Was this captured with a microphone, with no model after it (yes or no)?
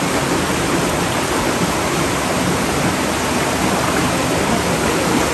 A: yes